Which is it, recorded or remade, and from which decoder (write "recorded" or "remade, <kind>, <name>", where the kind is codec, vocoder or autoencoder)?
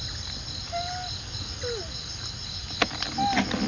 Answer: recorded